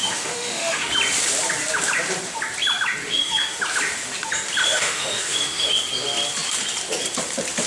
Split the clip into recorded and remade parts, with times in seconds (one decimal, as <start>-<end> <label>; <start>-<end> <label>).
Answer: 0.0-0.9 remade; 0.9-3.0 recorded; 3.0-3.6 remade; 3.6-4.6 recorded; 4.6-5.7 remade; 5.7-7.7 recorded